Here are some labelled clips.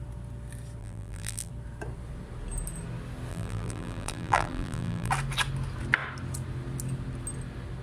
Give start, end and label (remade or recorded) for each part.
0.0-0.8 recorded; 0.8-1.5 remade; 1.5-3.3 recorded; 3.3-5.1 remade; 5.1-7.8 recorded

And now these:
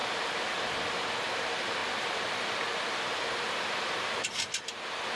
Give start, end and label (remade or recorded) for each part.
0.0-5.2 recorded